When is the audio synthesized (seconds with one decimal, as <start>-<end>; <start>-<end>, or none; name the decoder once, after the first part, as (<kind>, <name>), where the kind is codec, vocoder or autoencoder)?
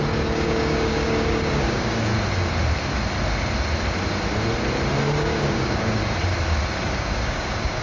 0.0-2.1 (codec, DAC); 5.0-6.0; 7.0-7.8